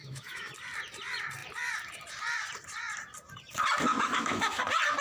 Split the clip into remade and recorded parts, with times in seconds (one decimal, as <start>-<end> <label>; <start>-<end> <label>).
0.0-0.5 remade; 0.5-3.9 recorded; 3.9-4.6 remade; 4.6-5.0 recorded